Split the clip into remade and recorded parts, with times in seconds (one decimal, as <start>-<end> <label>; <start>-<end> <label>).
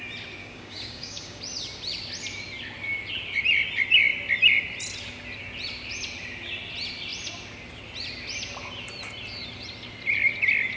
0.0-0.4 recorded; 0.4-1.4 remade; 1.4-10.8 recorded